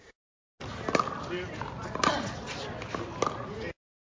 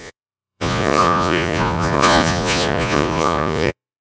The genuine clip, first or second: first